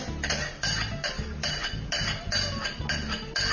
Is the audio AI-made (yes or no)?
no